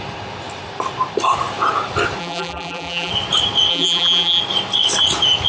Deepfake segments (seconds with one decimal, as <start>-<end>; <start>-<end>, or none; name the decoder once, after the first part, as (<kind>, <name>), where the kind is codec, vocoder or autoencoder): 2.2-3.1 (vocoder, BigVGAN v2); 3.7-4.4